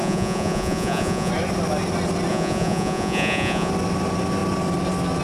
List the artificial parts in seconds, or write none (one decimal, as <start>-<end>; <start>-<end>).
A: 0.0-1.3; 2.3-3.7

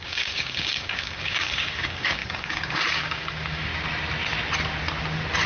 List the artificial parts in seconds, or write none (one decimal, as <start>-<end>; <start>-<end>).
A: 0.0-3.7